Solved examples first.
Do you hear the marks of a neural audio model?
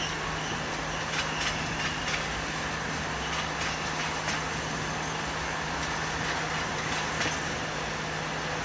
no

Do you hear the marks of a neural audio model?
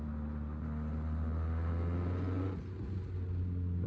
no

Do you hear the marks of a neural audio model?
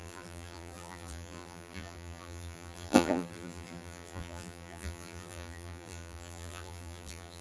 yes